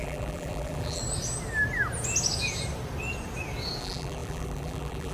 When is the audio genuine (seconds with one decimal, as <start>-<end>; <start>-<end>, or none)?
1.0-3.8